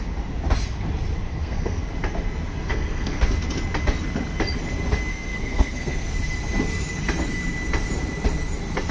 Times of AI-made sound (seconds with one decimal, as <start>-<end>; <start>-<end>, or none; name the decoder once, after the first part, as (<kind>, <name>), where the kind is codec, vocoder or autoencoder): 1.3-1.8 (codec, SNAC); 2.7-3.2; 5.1-6.1

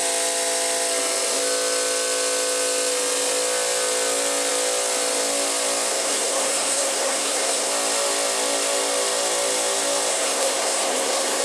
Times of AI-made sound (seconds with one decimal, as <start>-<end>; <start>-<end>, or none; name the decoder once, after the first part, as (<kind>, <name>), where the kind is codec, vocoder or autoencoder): 5.9-7.7 (codec, SNAC); 10.1-11.4

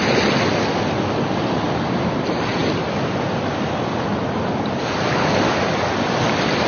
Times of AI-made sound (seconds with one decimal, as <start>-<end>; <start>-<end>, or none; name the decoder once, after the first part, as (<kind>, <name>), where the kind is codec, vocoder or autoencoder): none